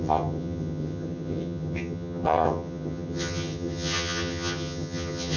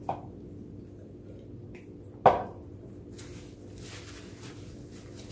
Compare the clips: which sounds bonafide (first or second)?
second